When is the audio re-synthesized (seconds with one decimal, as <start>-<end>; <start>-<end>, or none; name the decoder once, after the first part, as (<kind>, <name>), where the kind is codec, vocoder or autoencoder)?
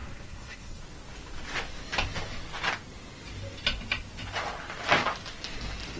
0.0-0.8 (codec, SNAC)